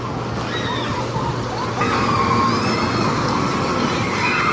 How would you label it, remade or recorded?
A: recorded